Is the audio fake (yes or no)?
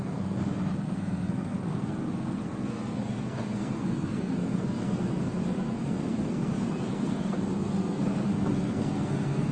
yes